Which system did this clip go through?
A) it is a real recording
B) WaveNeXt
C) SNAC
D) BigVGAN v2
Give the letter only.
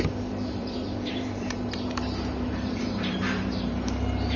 D